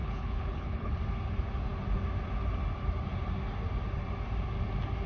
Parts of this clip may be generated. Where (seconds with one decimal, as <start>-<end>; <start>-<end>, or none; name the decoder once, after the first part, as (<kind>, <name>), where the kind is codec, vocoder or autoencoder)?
0.0-1.0 (codec, HILCodec)